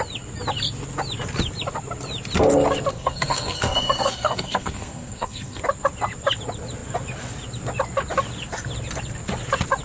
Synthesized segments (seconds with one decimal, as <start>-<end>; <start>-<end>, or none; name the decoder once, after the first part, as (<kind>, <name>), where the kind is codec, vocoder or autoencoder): 2.9-5.6 (codec, SNAC)